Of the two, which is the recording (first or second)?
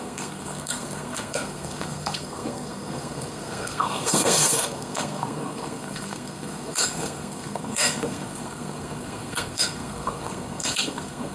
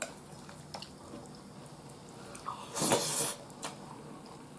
second